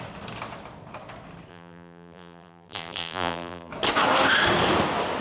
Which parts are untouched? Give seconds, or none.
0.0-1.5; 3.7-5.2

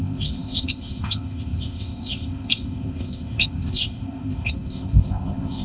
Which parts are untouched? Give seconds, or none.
none

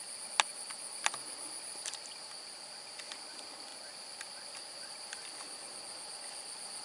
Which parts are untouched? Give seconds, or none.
0.0-6.8

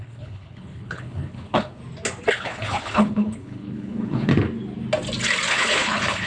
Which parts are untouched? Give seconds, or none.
1.8-2.3; 4.3-5.5

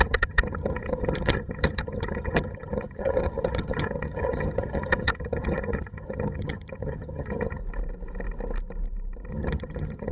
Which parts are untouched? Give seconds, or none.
7.6-9.3

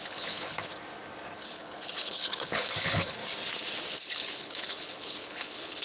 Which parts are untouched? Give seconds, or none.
0.7-1.4; 3.2-4.0

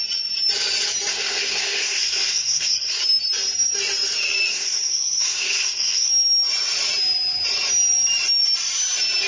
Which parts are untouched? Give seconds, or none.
0.0-1.1; 3.0-4.5; 6.1-9.3